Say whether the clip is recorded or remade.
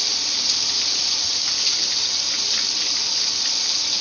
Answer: recorded